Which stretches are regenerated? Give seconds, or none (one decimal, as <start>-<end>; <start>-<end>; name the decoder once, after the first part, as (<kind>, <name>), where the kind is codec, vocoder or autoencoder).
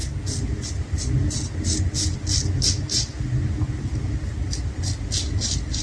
none